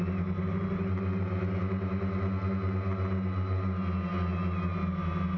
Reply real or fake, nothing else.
real